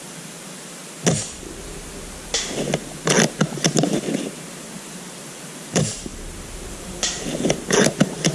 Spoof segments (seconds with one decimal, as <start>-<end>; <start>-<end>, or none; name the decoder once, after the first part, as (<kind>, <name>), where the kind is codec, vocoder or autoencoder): 0.0-0.8 (vocoder, BigVGAN v2); 4.4-6.1; 6.7-8.3